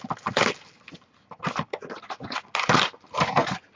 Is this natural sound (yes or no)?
yes